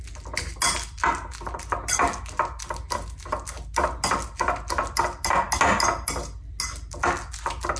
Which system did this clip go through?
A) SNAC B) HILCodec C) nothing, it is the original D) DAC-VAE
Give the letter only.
C